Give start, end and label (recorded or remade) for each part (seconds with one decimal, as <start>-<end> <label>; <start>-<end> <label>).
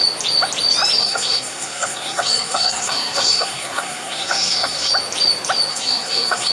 0.0-1.0 recorded; 1.0-4.9 remade; 4.9-5.7 recorded; 5.7-6.5 remade